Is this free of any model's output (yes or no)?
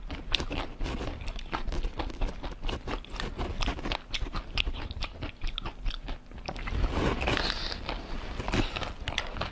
yes